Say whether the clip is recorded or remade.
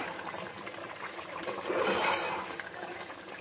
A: remade